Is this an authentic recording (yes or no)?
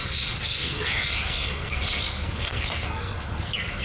no